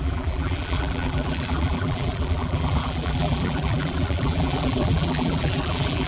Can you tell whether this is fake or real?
fake